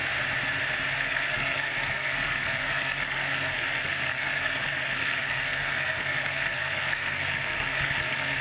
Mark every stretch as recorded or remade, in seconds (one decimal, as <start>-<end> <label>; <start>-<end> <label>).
0.0-0.9 recorded; 0.9-8.4 remade